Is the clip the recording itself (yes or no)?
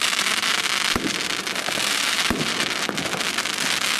yes